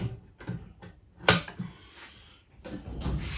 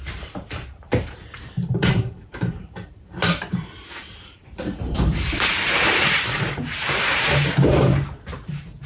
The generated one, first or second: second